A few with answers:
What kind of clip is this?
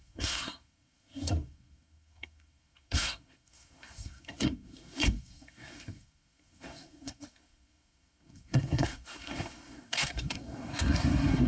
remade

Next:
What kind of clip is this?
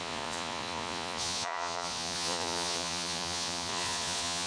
remade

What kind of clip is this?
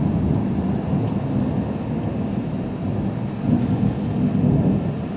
recorded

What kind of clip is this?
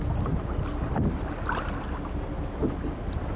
recorded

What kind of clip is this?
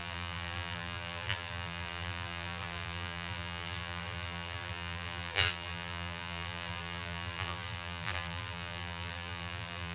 remade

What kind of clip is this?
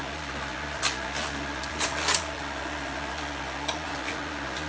remade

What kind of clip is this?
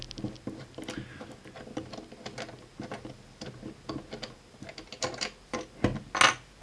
recorded